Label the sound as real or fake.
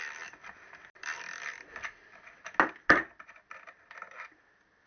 real